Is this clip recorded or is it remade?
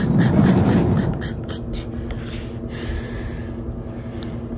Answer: recorded